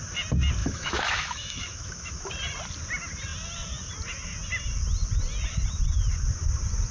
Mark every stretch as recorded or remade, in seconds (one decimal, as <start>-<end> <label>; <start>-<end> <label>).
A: 0.0-0.6 recorded; 0.6-2.3 remade; 2.3-6.9 recorded